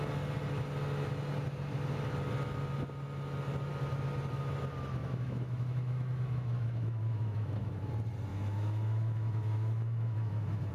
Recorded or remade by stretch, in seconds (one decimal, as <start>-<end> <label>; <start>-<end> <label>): 0.0-5.0 recorded; 5.0-7.9 remade; 7.9-8.3 recorded; 8.3-10.7 remade